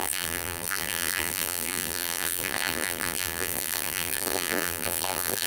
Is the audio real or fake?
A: fake